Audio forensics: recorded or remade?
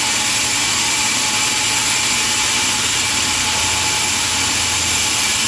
recorded